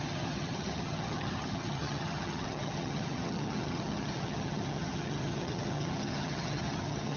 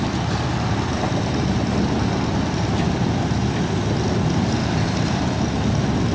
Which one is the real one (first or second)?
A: second